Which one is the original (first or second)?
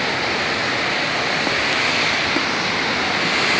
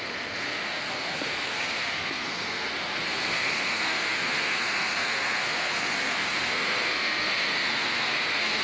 first